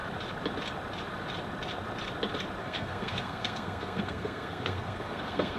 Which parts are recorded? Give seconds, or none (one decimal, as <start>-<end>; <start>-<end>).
0.0-2.6